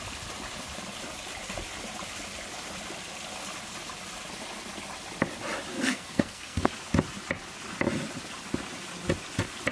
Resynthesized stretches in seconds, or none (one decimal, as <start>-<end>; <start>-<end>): 5.7-6.7